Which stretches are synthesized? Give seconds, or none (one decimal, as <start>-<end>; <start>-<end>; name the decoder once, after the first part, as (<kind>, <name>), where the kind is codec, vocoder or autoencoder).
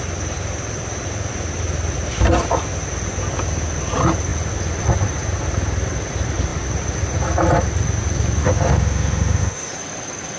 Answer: 8.4-9.7 (autoencoder, DAC-VAE)